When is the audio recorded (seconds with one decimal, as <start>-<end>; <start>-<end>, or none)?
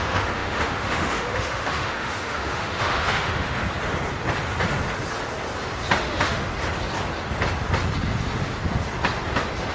3.6-6.0; 6.5-9.7